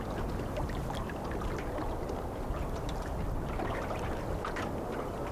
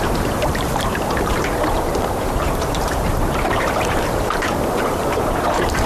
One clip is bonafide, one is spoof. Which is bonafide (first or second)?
first